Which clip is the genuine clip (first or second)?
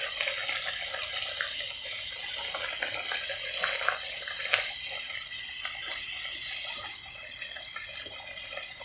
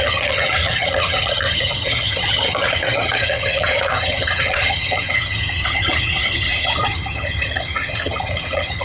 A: first